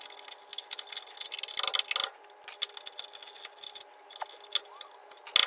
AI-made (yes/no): no